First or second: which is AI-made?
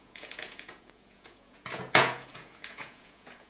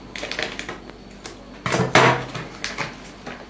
first